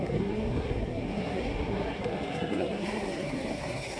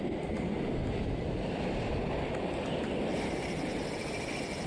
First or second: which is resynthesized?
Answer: first